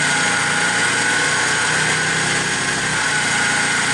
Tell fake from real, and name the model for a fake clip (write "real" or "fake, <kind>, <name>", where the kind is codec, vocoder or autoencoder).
real